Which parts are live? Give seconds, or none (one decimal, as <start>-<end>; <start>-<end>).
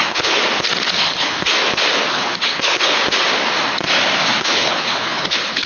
0.4-1.1; 1.5-2.1; 3.0-4.4